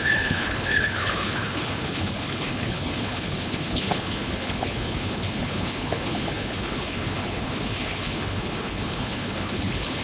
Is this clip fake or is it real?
fake